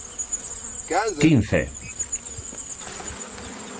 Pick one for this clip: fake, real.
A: real